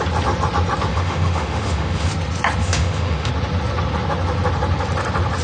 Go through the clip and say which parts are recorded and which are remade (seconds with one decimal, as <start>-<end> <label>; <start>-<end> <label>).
0.0-0.9 recorded; 0.9-2.1 remade; 2.1-2.6 recorded; 2.6-3.3 remade; 3.3-5.4 recorded